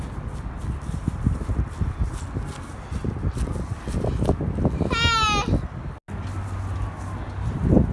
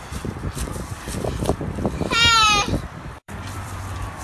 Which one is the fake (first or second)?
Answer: second